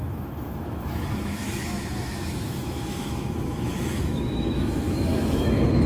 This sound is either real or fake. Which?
fake